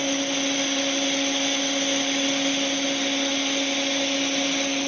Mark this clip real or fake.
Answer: real